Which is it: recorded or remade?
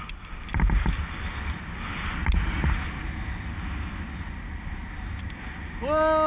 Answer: recorded